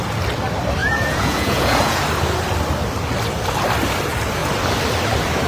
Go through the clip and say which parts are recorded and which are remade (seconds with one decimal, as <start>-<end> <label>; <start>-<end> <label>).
0.0-0.8 recorded; 0.8-2.0 remade; 2.0-5.5 recorded